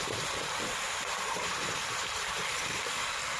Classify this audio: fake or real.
fake